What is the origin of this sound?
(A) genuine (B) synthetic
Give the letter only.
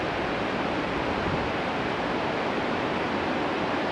A